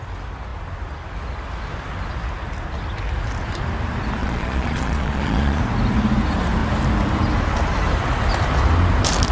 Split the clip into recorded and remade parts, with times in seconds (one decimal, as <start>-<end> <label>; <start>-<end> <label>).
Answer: 0.0-4.2 recorded; 4.2-5.6 remade; 5.6-9.3 recorded